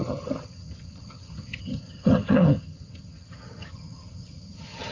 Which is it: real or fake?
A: fake